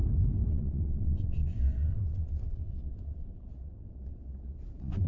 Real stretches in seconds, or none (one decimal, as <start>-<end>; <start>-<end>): 0.0-0.5